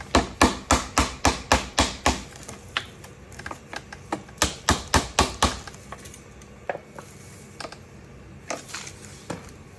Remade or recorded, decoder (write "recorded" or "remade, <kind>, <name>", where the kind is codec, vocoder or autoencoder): recorded